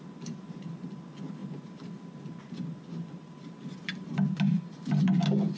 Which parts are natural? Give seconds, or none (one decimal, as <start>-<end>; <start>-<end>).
0.0-5.6